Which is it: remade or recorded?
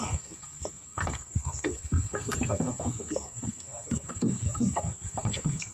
remade